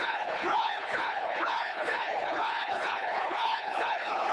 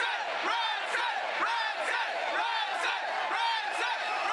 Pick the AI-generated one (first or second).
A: first